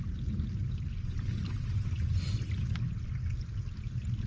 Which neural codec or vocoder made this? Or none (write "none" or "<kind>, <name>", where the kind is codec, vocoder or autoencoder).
none